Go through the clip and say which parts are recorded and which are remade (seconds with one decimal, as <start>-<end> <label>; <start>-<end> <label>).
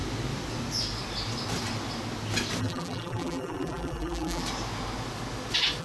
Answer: 0.0-2.6 recorded; 2.6-4.4 remade; 4.4-5.8 recorded